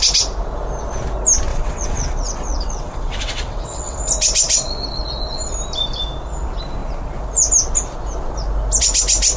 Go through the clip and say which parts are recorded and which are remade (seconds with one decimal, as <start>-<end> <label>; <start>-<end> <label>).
0.0-1.5 recorded; 1.5-4.0 remade; 4.0-9.4 recorded